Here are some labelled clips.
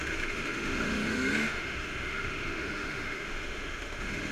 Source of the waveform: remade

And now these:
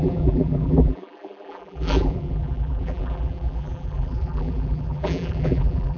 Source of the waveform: remade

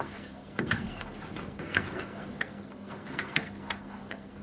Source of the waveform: remade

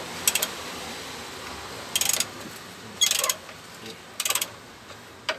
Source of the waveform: recorded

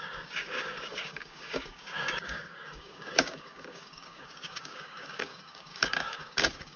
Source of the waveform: remade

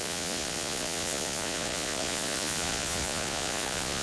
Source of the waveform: remade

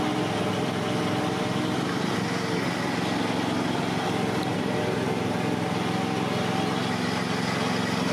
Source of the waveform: recorded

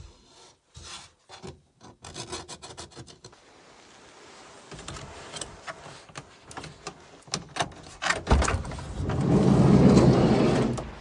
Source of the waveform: recorded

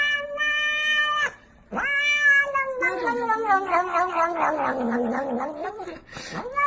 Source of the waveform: recorded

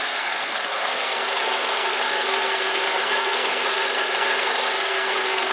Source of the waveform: remade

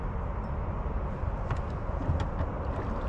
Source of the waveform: recorded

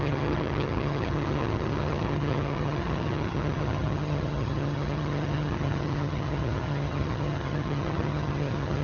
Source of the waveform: remade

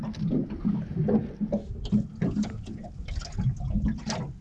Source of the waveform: recorded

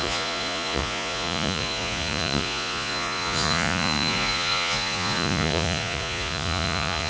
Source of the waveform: remade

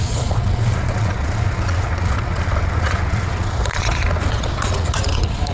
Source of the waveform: remade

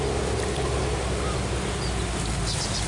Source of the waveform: recorded